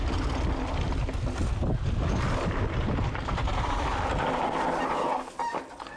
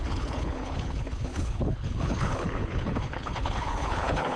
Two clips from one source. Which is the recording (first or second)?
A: first